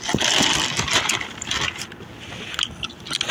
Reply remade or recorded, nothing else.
recorded